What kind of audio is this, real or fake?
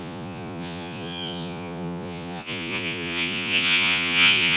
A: fake